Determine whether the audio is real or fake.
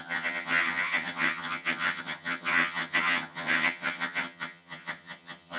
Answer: fake